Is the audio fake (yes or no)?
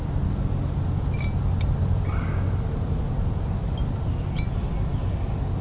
no